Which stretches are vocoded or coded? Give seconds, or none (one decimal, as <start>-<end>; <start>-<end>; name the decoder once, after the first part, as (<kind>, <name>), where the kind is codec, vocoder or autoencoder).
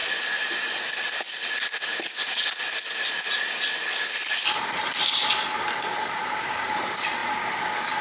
none